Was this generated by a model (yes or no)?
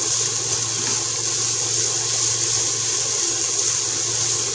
no